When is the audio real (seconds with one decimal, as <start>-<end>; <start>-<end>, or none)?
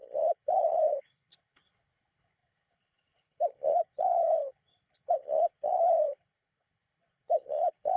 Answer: none